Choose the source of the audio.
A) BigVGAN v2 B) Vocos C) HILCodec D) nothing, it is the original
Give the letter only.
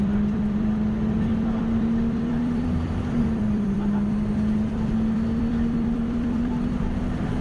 A